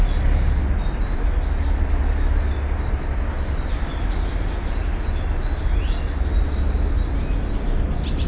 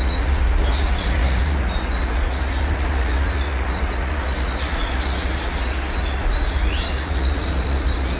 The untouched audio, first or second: first